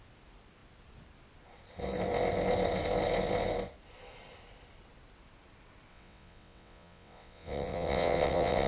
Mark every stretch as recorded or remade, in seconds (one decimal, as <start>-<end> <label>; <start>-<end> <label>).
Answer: 0.0-5.9 recorded; 5.9-8.7 remade